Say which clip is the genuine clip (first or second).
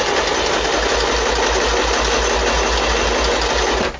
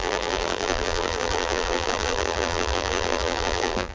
first